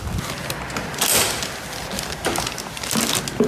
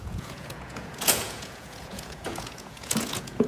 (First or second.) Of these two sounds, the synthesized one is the second